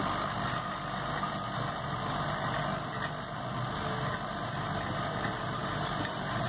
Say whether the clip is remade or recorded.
recorded